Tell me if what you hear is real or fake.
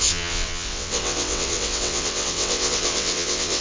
fake